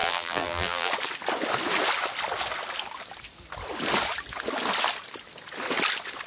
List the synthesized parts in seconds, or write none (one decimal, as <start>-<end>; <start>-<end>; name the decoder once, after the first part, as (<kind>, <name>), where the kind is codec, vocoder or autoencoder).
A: 0.0-0.9 (vocoder, BigVGAN v2)